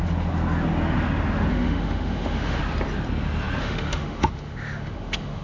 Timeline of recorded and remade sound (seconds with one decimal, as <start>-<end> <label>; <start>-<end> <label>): 0.0-1.5 recorded; 1.5-2.6 remade; 2.6-3.6 recorded; 3.6-5.4 remade